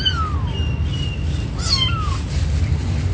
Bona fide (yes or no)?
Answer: yes